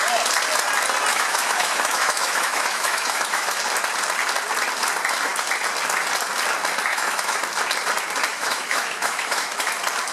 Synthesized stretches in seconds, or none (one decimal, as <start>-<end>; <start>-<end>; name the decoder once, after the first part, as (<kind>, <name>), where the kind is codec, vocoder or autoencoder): 1.1-3.6 (autoencoder, DAC-VAE); 6.9-7.4; 8.3-9.7